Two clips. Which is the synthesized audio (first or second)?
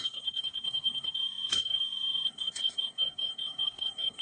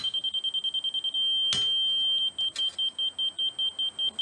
first